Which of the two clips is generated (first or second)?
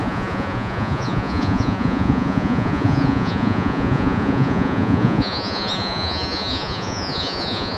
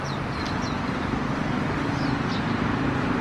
first